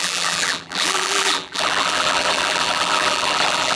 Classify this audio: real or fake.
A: fake